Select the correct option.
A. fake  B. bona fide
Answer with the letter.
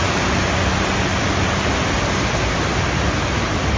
B